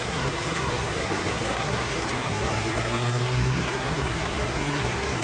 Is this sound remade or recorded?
remade